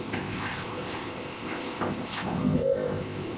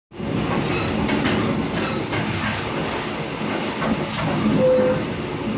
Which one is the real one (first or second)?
second